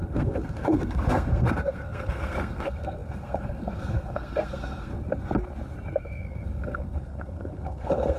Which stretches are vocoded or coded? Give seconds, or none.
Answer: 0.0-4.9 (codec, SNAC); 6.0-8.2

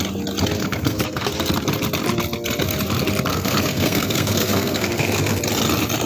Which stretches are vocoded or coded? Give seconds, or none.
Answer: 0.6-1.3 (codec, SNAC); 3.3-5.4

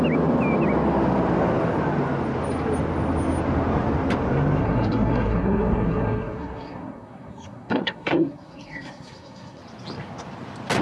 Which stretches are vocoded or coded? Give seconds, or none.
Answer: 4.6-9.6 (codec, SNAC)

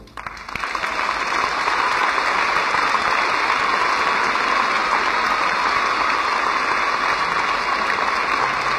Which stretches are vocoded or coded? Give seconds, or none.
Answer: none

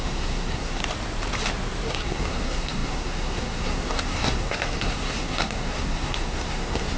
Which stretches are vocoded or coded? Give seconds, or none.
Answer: 0.0-0.8 (codec, SNAC); 1.9-7.0